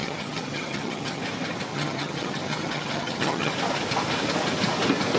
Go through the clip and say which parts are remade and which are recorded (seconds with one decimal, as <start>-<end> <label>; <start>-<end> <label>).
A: 0.0-1.2 remade; 1.2-1.7 recorded; 1.7-3.5 remade; 3.5-5.2 recorded